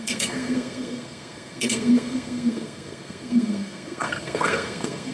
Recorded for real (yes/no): no